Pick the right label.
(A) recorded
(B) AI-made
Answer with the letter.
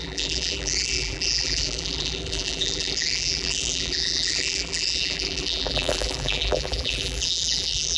B